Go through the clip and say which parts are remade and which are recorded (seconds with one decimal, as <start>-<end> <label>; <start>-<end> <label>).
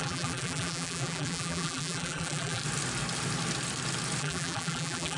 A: 0.0-2.6 remade; 2.6-4.2 recorded; 4.2-5.2 remade